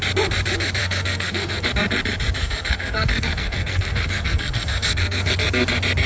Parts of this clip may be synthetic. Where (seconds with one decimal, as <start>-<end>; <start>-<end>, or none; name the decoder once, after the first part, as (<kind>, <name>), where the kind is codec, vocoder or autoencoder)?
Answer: 0.8-1.7 (codec, SNAC); 2.4-5.3